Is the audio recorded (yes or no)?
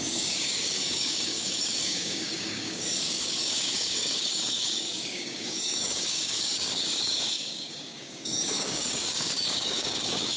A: no